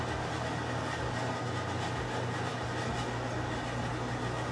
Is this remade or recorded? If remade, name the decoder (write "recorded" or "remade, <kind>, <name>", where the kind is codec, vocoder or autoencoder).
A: recorded